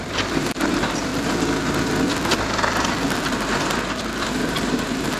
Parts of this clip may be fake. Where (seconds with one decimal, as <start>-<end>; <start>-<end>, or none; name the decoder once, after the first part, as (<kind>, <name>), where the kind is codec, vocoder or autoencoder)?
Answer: 0.0-1.1 (vocoder, BigVGAN v2); 4.2-5.2